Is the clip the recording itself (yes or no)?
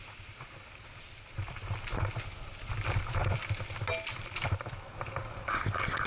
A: yes